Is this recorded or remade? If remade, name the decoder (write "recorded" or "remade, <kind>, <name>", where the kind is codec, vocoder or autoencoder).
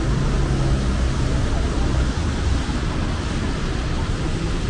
recorded